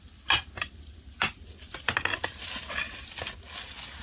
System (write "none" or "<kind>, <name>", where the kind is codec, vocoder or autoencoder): none